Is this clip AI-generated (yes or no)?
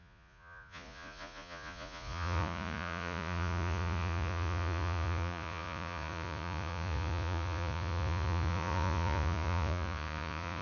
yes